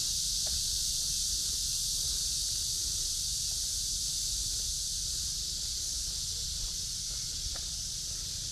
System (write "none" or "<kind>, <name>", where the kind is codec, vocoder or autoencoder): none